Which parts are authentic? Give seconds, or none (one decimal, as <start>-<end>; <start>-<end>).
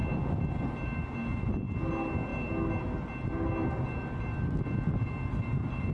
0.0-5.9